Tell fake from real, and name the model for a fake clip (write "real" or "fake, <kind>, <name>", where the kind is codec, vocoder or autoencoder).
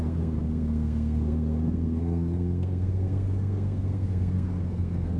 fake, codec, SNAC